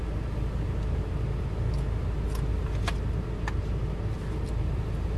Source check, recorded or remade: recorded